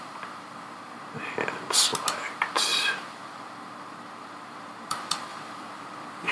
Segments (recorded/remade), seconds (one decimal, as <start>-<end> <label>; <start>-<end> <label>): 0.0-1.9 remade; 1.9-2.8 recorded; 2.8-6.3 remade